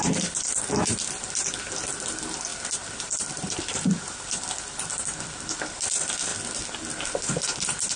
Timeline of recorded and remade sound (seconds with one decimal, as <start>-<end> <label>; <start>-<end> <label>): 0.0-2.5 remade; 2.5-3.2 recorded; 3.2-8.0 remade